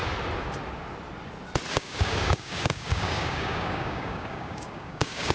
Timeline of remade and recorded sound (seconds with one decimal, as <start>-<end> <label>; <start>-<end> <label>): 0.0-1.7 recorded; 1.7-5.3 remade